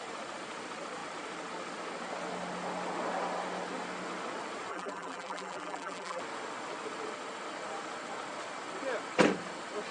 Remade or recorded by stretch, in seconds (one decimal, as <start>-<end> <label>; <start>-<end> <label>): 0.0-4.7 recorded; 4.7-6.2 remade; 6.2-9.9 recorded